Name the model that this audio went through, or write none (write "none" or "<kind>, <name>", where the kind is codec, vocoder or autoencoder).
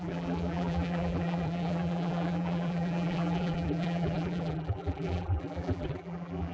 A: vocoder, BigVGAN v2